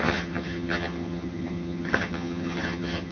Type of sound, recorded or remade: remade